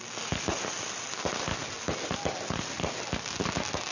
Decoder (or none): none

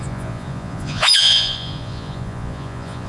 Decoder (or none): vocoder, Vocos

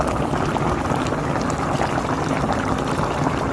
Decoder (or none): none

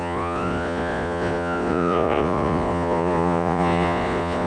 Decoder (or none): vocoder, Vocos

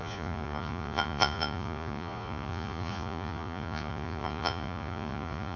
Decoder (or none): vocoder, Vocos